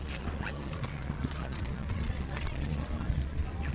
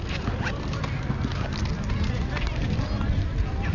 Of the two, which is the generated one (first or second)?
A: first